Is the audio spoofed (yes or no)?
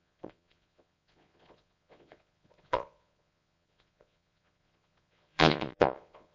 yes